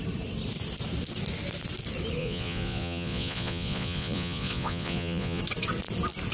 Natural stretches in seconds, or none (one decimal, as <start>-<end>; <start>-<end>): 0.0-2.2; 5.4-6.3